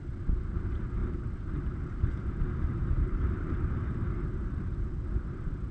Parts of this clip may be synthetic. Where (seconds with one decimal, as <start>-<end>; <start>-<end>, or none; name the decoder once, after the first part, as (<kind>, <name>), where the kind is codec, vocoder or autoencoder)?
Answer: 1.0-3.6 (vocoder, BigVGAN v2)